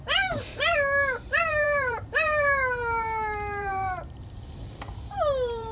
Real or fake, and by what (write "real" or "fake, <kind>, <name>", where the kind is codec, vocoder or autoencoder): fake, vocoder, BigVGAN v2